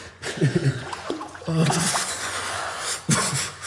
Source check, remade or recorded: remade